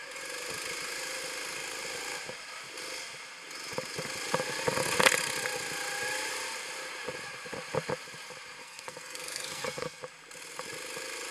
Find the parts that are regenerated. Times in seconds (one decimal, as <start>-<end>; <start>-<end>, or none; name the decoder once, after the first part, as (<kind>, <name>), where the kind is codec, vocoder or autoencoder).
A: 8.6-10.0 (codec, SNAC)